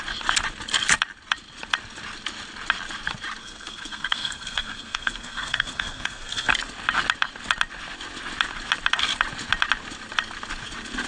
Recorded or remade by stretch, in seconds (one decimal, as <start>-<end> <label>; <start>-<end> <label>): 0.0-3.4 recorded; 3.4-6.5 remade; 6.5-11.1 recorded